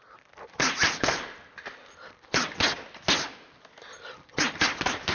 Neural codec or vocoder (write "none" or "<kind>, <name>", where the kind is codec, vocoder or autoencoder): none